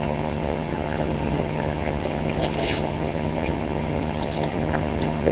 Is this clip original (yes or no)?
no